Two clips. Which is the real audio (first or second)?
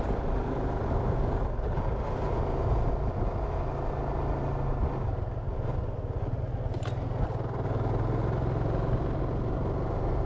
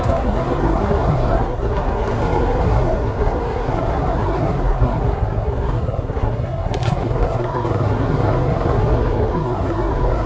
first